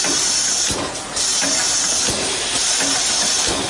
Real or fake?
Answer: real